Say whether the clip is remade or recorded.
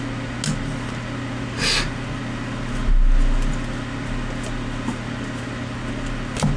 recorded